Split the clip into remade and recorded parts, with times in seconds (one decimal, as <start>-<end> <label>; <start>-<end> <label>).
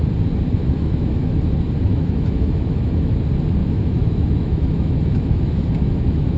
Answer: 0.0-0.6 recorded; 0.6-1.4 remade; 1.4-1.9 recorded; 1.9-3.2 remade; 3.2-3.6 recorded; 3.6-6.4 remade